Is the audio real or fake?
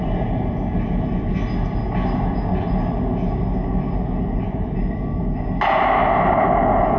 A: real